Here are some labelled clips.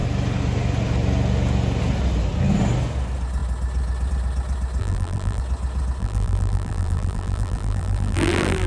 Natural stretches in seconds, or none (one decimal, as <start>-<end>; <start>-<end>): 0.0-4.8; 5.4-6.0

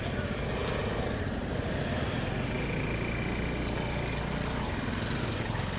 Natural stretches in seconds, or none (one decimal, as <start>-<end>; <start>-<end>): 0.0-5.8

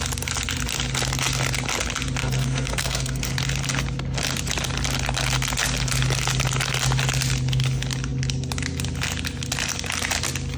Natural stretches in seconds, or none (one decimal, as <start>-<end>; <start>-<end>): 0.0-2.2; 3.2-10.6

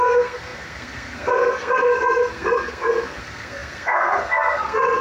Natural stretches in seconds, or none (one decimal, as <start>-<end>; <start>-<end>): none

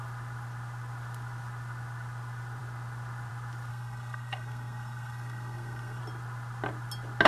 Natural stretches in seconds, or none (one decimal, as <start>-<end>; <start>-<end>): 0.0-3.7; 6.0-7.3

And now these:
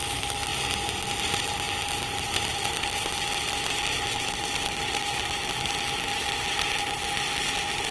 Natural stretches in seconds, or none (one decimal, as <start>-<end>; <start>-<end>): 0.0-7.9